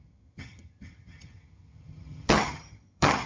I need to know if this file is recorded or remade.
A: remade